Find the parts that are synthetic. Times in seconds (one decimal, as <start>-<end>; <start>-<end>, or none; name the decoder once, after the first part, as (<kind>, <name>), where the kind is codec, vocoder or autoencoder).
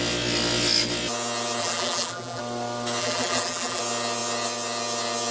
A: 1.6-2.4 (vocoder, BigVGAN v2); 3.0-3.8